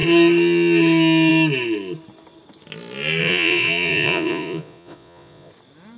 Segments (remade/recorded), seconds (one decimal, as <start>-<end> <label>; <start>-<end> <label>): 0.0-3.2 recorded; 3.2-5.5 remade; 5.5-6.0 recorded